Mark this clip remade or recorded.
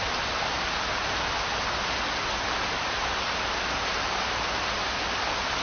recorded